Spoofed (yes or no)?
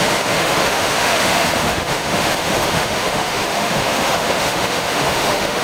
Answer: yes